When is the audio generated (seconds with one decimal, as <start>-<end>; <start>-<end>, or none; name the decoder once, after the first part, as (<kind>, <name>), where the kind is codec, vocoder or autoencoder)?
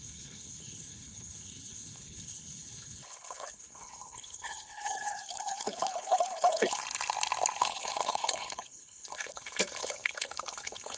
0.0-6.8 (codec, HILCodec); 7.6-11.0